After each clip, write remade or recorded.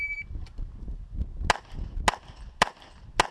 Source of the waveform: recorded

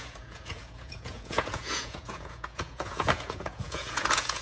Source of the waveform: remade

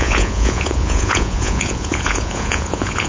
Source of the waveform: remade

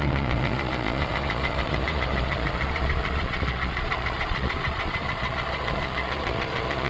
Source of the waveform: remade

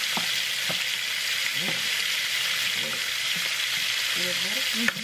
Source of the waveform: recorded